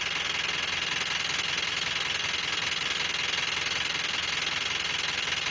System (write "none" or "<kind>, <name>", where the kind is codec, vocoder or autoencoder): none